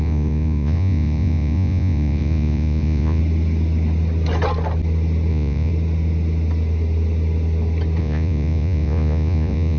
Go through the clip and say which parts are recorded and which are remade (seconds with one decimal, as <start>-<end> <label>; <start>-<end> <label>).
0.0-3.2 remade; 3.2-5.3 recorded; 5.3-5.7 remade; 5.7-8.0 recorded; 8.0-9.8 remade